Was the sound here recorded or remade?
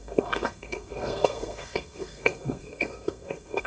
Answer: remade